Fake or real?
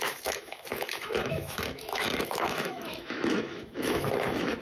fake